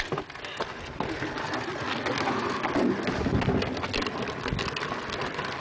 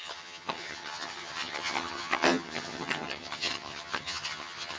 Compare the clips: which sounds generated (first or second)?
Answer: second